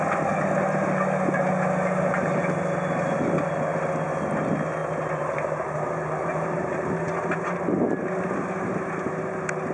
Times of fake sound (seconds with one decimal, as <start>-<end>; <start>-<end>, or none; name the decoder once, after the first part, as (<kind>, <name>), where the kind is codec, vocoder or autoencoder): 4.8-7.4 (vocoder, BigVGAN v2)